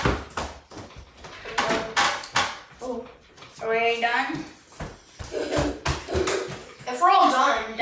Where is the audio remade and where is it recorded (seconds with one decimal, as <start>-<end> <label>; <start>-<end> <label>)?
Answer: 0.0-6.6 recorded; 6.6-7.8 remade